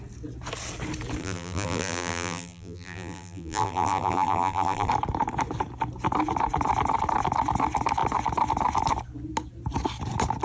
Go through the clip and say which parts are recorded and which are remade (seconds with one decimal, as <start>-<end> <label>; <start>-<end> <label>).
0.0-1.2 recorded; 1.2-4.9 remade; 4.9-10.4 recorded